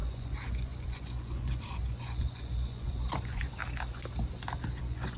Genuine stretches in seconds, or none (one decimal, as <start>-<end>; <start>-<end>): 3.6-4.8